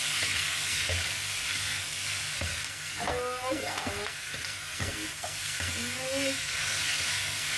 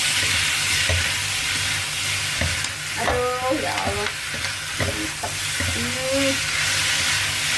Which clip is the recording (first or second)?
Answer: second